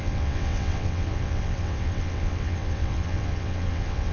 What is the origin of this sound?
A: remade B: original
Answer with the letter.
A